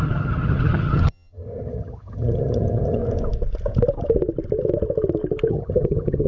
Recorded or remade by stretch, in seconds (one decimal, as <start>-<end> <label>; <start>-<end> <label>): 0.0-3.0 remade; 3.0-5.5 recorded; 5.5-6.3 remade